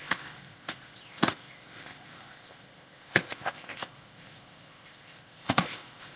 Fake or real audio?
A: fake